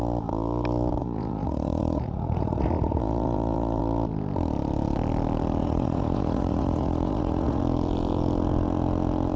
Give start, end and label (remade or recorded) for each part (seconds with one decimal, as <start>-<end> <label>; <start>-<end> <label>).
0.0-1.0 recorded; 1.0-3.8 remade; 3.8-5.6 recorded; 5.6-7.6 remade; 7.6-9.4 recorded